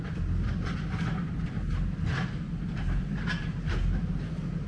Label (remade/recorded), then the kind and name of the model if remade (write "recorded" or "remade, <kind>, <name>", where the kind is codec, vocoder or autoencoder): recorded